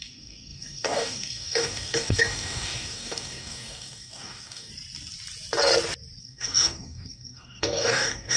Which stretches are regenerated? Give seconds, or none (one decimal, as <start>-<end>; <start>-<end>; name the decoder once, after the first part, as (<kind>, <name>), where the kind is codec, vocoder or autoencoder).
0.0-4.7 (codec, DAC); 6.2-8.4